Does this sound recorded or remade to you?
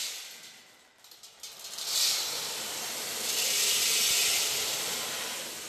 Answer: recorded